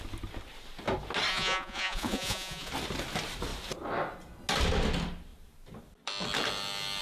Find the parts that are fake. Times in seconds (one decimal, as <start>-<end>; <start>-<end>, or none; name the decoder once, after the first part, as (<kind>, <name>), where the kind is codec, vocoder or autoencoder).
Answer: 1.3-2.7 (vocoder, Vocos)